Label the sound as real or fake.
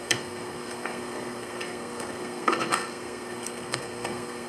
fake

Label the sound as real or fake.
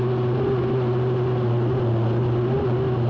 real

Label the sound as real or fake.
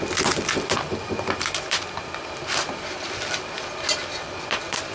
fake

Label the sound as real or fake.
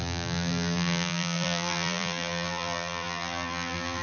fake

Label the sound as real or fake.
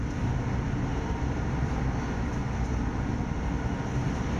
real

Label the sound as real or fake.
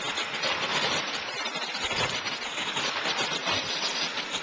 real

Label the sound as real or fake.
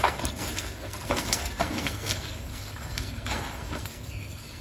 fake